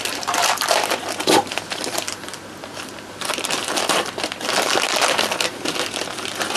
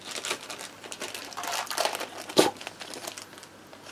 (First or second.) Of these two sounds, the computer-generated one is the first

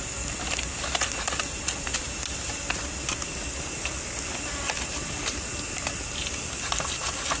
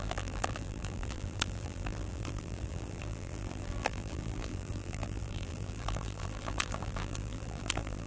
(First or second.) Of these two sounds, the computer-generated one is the second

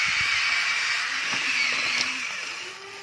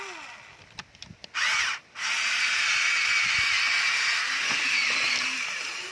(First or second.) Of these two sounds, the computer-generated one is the first